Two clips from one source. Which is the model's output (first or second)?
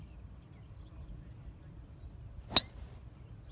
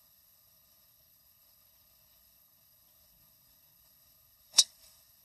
second